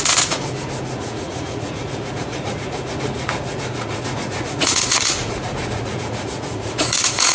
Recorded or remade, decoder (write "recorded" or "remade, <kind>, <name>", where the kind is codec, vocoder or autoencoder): remade, vocoder, Vocos